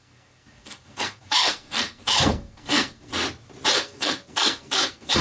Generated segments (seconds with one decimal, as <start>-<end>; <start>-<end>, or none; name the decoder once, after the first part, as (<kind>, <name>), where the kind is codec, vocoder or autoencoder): 0.0-3.1 (codec, SNAC); 3.7-5.2